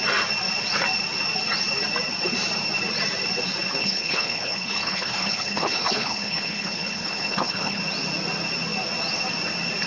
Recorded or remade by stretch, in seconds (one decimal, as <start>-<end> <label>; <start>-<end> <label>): 0.0-3.8 recorded; 3.8-7.8 remade; 7.8-9.9 recorded